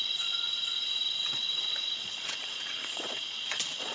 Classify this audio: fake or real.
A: fake